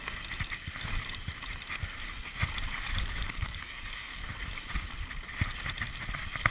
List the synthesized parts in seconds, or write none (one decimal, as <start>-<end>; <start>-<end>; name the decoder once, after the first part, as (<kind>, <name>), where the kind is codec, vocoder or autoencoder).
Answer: 2.7-4.2 (codec, DAC)